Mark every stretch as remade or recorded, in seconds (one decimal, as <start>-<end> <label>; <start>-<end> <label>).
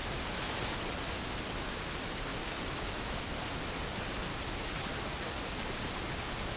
0.0-2.3 recorded; 2.3-3.3 remade; 3.3-4.3 recorded; 4.3-4.8 remade; 4.8-6.6 recorded